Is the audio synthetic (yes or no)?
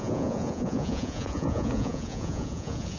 yes